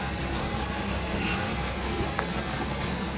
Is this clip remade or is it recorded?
remade